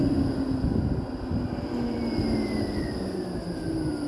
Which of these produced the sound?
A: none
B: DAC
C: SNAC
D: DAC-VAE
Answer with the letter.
A